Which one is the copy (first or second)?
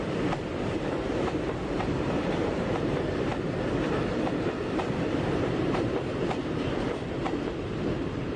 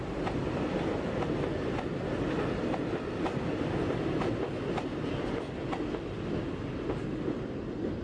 first